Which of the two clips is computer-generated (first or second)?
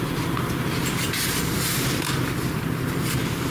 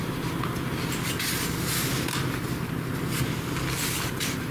first